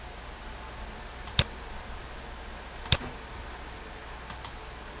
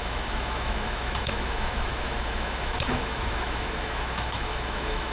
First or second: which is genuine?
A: first